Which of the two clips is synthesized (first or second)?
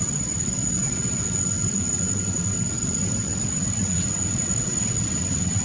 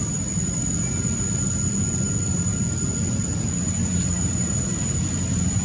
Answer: first